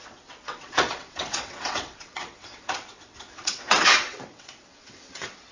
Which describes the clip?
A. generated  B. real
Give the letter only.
A